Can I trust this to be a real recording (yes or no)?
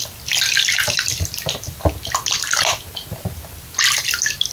no